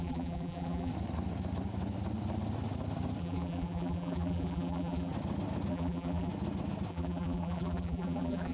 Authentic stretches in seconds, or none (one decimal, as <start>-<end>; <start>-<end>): 0.9-3.2; 5.1-5.7; 6.3-6.9